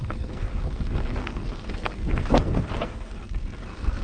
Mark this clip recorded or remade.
remade